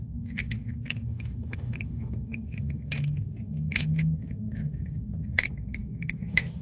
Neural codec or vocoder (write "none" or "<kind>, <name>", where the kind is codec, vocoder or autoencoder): autoencoder, DAC-VAE